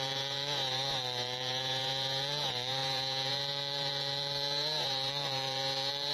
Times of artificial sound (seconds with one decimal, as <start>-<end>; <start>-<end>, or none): 0.0-6.1